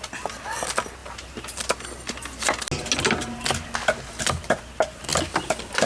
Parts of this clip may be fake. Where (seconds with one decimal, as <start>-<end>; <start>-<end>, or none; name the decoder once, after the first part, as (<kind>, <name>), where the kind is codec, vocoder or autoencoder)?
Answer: none